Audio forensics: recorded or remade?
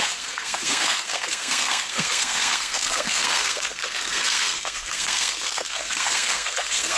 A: remade